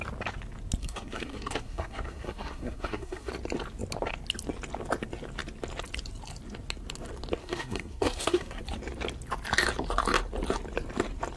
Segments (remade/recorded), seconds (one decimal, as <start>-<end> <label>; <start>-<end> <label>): 0.0-0.8 recorded; 0.8-3.3 remade; 3.3-7.4 recorded; 7.4-8.6 remade; 8.6-11.4 recorded